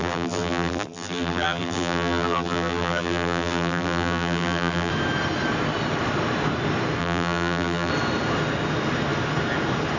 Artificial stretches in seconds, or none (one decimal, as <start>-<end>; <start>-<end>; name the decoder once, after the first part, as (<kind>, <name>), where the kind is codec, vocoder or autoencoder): 0.0-4.9 (vocoder, BigVGAN v2); 7.0-7.9